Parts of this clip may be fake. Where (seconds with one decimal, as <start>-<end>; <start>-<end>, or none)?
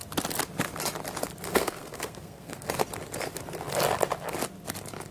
1.5-2.7